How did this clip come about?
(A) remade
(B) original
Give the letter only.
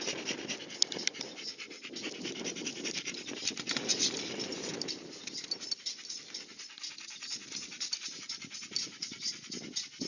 B